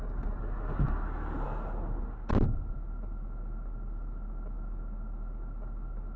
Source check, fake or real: real